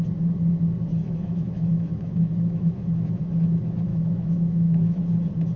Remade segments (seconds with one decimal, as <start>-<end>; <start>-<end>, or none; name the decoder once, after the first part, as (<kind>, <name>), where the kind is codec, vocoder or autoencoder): 1.0-3.2 (autoencoder, DAC-VAE); 3.9-5.0